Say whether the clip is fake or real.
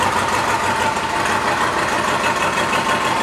real